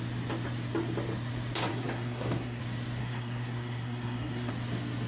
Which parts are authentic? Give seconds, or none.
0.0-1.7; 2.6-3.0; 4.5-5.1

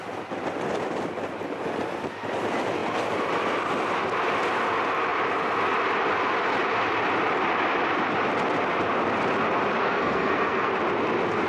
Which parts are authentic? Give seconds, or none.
0.0-9.8; 10.7-11.5

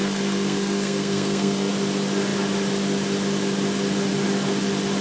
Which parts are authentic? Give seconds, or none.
1.7-5.0